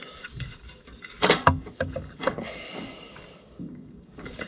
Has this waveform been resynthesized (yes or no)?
yes